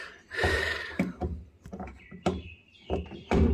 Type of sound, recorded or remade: remade